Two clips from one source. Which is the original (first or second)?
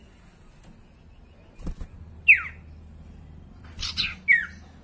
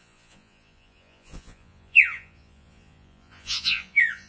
first